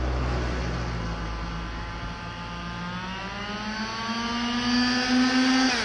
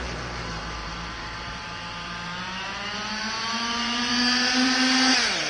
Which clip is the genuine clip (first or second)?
first